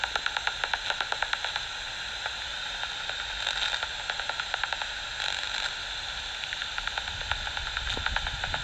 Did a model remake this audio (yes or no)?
no